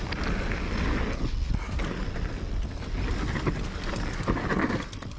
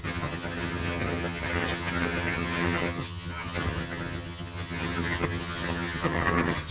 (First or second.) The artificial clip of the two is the second